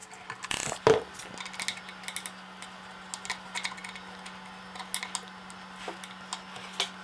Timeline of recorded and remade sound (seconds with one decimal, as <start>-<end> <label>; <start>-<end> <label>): 0.0-7.0 recorded